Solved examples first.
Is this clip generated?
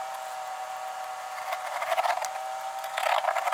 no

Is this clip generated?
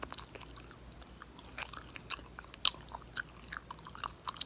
no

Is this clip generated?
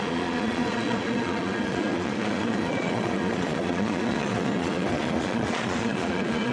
yes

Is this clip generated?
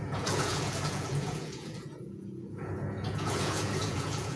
yes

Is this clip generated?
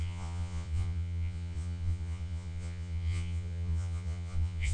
yes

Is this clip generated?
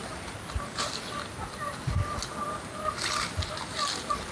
no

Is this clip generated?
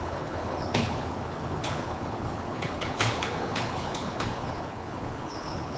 yes